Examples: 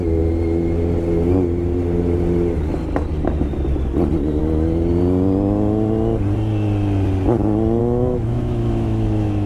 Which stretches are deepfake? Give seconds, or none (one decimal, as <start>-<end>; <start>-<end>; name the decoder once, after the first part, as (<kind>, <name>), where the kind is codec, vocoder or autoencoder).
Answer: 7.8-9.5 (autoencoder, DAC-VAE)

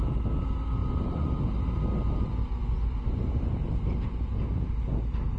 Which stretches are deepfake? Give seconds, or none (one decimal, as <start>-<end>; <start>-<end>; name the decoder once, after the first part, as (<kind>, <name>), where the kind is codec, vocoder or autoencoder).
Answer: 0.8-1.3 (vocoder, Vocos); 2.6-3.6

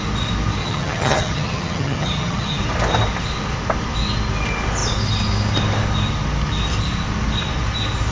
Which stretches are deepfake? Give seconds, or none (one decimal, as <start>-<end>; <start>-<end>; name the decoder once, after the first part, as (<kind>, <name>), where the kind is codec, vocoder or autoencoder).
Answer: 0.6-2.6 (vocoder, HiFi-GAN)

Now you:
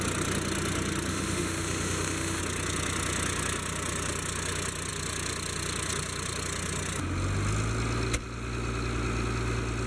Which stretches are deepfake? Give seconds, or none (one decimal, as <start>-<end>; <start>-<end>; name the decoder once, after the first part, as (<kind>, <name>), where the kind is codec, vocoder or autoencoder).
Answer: 1.1-2.4 (autoencoder, DAC-VAE)

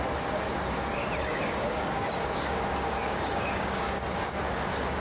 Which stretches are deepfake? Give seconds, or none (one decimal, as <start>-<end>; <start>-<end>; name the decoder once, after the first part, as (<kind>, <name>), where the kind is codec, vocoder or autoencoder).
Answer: 1.2-4.2 (codec, DAC)

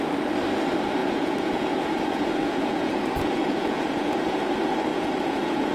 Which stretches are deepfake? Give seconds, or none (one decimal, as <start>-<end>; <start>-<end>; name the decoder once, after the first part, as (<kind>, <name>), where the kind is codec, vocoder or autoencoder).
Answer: 1.0-4.4 (vocoder, Vocos); 4.9-5.7

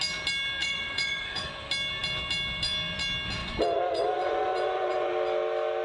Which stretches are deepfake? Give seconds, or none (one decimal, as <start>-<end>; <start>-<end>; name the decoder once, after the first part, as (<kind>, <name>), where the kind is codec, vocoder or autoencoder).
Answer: 0.6-1.5 (vocoder, Vocos); 3.4-5.1